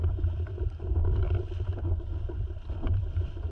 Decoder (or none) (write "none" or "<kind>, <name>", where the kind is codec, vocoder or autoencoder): vocoder, BigVGAN v2